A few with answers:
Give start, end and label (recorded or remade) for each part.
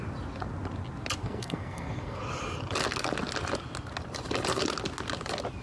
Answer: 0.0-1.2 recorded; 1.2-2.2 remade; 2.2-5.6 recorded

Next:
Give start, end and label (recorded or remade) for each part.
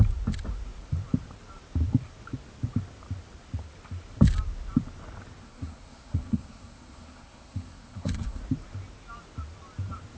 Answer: 0.0-5.4 recorded; 5.4-8.4 remade; 8.4-10.2 recorded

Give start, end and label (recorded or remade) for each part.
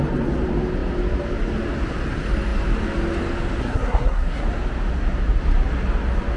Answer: 0.0-3.6 recorded; 3.6-4.4 remade; 4.4-6.4 recorded